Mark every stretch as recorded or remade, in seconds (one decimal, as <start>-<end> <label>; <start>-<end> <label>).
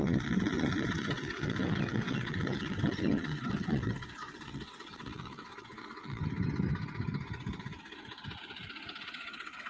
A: 0.0-6.2 remade; 6.2-9.0 recorded; 9.0-9.7 remade